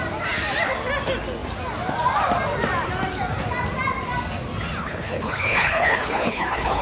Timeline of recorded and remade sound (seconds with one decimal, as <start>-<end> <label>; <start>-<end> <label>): 0.0-4.8 recorded; 4.8-6.8 remade